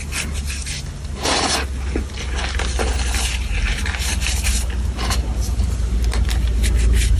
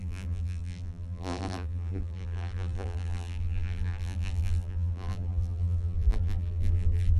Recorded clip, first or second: first